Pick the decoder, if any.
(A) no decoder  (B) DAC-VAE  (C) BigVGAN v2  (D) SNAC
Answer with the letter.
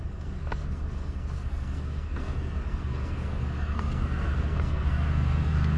D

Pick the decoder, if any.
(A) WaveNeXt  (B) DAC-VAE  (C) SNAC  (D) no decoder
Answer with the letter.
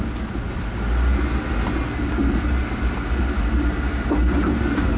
D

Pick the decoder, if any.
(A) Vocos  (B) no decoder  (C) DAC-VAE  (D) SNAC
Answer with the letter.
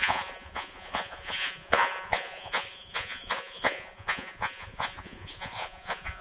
A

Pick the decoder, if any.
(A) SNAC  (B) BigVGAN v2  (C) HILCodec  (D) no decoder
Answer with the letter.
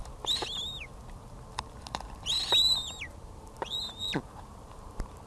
D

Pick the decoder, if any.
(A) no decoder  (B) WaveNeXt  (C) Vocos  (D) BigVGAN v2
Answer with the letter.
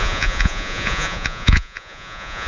C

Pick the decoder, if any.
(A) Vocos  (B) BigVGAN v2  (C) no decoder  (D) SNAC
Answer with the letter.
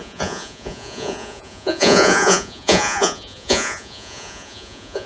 A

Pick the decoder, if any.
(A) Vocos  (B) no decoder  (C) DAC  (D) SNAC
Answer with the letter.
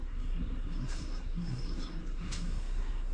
D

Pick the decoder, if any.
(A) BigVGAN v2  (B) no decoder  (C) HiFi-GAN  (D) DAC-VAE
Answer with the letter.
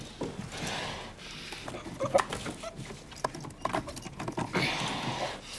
B